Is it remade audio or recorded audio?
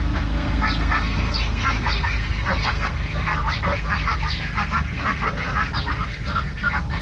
remade